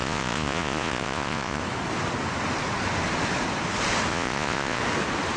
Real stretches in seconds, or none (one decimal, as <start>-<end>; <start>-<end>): 1.6-4.1; 4.8-5.4

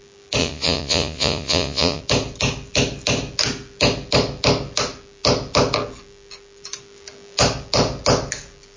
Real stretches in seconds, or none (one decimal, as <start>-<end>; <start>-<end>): 0.0-0.4; 2.0-8.8

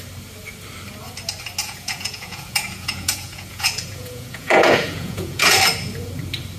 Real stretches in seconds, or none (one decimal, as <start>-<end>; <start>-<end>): 0.0-1.6; 5.6-6.6

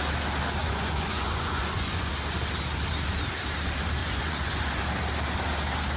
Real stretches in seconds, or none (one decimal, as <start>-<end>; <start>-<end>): 0.0-0.6; 2.1-4.0; 4.8-6.0

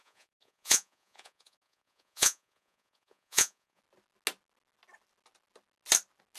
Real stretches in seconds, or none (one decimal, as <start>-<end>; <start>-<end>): 3.8-6.4

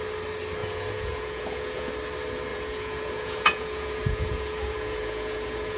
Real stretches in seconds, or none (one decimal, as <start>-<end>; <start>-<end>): 0.0-0.6; 1.9-2.5